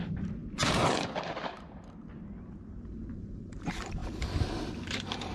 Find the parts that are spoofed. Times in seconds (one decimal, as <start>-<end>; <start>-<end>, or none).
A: 0.0-0.4; 3.1-5.3